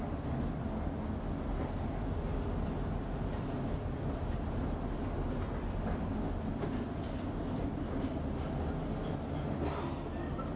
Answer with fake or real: real